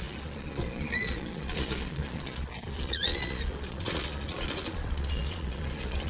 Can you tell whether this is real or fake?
fake